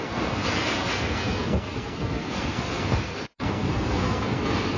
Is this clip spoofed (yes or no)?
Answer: yes